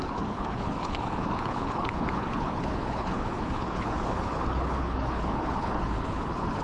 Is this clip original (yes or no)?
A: no